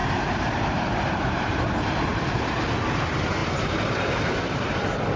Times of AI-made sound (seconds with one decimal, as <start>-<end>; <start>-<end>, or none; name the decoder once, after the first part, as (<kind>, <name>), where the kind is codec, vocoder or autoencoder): 0.0-1.7 (vocoder, BigVGAN v2); 2.1-2.6; 3.4-4.1